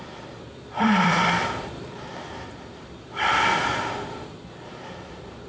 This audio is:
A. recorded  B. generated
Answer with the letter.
B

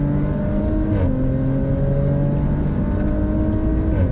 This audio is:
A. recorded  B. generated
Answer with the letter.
A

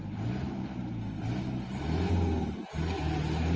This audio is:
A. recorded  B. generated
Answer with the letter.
A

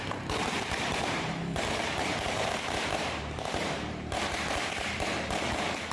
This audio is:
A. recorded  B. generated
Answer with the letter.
B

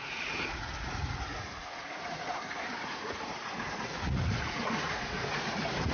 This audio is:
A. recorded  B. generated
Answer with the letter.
B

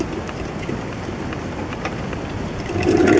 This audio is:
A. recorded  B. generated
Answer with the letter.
A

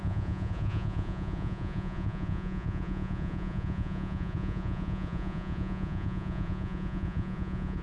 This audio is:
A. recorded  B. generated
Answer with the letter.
B